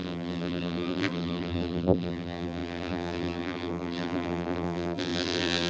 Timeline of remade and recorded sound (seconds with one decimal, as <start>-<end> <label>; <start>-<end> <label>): 0.0-5.7 remade